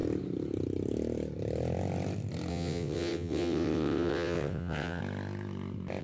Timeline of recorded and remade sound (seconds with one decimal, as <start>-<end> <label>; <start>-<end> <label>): 0.0-2.5 recorded; 2.5-5.0 remade; 5.0-6.0 recorded